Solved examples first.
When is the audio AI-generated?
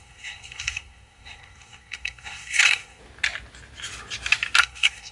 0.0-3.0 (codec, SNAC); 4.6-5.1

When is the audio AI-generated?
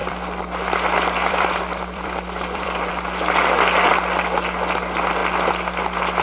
0.0-2.9 (vocoder, BigVGAN v2)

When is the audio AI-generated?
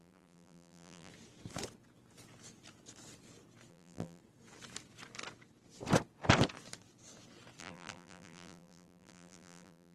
0.0-1.1 (vocoder, BigVGAN v2); 3.7-4.2; 7.6-9.9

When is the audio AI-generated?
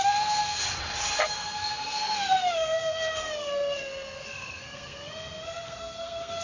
0.0-0.6 (codec, SNAC); 1.2-6.4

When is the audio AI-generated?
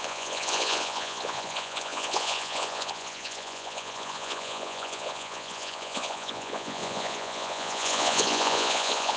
0.0-9.2 (vocoder, Vocos)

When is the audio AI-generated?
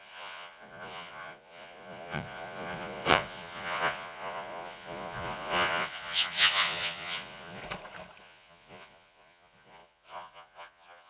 0.0-7.6 (vocoder, Vocos); 8.2-11.1